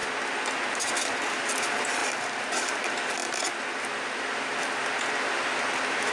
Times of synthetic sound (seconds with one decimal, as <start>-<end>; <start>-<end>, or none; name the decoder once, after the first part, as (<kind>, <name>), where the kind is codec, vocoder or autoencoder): none